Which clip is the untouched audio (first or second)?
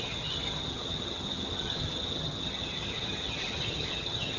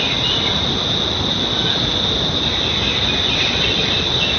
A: second